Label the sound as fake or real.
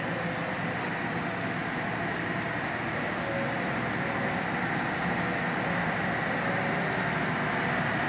real